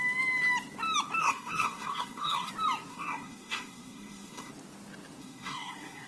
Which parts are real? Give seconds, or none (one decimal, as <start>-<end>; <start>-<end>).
0.0-1.2; 2.5-2.9; 4.5-5.2